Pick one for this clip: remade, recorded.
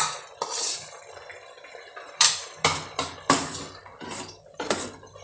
recorded